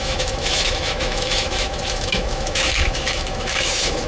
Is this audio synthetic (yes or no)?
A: yes